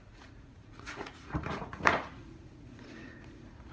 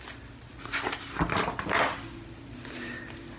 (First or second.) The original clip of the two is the second